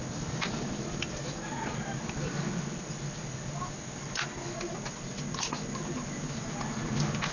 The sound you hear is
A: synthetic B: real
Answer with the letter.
B